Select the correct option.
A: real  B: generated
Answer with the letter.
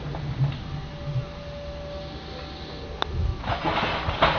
A